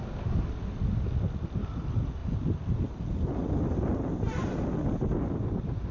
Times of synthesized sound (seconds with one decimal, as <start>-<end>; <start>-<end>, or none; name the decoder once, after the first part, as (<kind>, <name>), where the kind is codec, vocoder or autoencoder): none